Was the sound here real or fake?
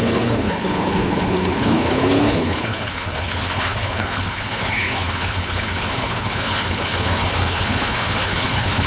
fake